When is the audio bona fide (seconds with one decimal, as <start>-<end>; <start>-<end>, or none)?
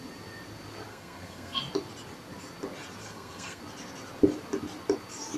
0.0-0.9; 1.6-3.0; 3.6-5.4